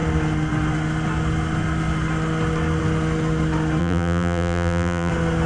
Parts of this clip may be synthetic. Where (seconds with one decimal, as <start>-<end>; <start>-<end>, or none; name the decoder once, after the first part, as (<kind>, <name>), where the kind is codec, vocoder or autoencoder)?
3.8-5.1 (vocoder, BigVGAN v2)